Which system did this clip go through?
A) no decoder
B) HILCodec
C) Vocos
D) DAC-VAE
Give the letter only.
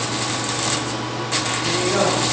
A